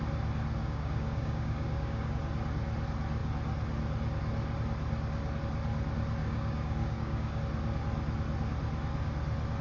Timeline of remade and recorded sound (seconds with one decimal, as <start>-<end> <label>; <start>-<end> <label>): 0.0-0.6 recorded; 0.6-2.2 remade; 2.2-6.2 recorded; 6.2-7.4 remade; 7.4-9.6 recorded